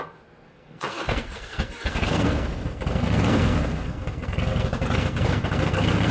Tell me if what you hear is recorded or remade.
remade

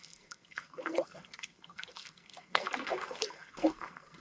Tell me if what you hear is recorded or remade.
remade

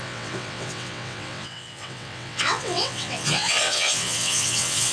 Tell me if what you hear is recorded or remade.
remade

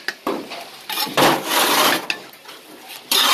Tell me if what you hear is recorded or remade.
recorded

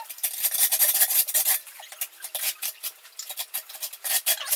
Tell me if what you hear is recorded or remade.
remade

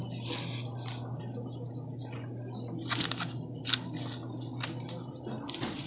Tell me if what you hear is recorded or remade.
recorded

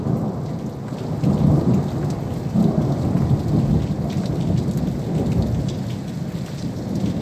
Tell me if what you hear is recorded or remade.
recorded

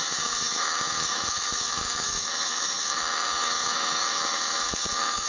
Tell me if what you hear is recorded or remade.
remade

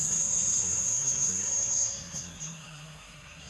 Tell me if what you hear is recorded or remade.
remade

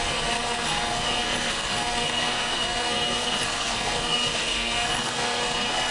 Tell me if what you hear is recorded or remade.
remade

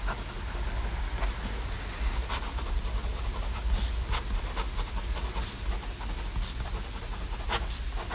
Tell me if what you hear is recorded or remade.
recorded